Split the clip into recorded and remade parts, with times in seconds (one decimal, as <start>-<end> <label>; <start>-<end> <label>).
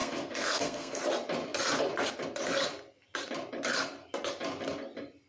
0.0-1.0 remade; 1.0-5.3 recorded